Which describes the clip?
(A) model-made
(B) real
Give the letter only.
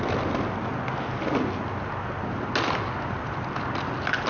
B